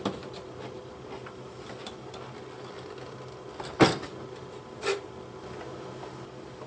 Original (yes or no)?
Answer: yes